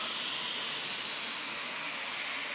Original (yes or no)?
yes